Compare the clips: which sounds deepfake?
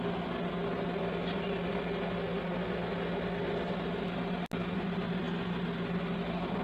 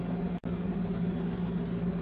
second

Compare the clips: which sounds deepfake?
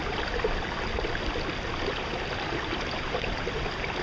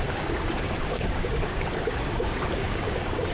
second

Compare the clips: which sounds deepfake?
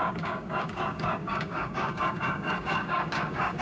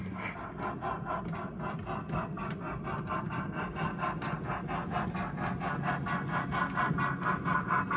first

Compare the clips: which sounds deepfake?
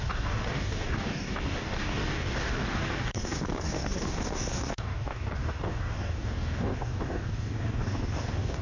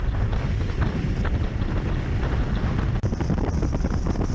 first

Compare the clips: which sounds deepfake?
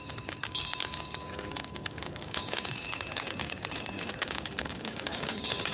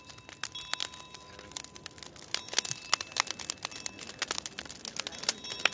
first